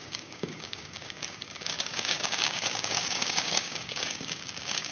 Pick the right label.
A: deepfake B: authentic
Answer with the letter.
A